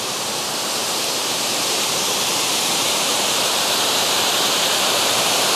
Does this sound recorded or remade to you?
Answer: remade